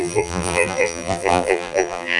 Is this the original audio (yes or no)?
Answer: no